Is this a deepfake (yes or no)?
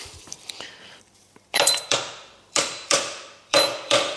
yes